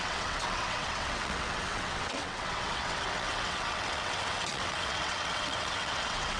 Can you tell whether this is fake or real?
fake